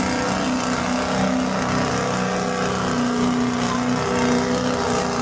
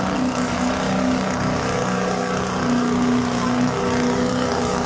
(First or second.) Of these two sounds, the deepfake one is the second